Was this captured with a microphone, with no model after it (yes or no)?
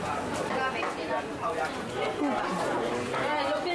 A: yes